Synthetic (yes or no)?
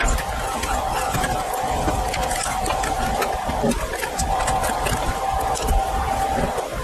no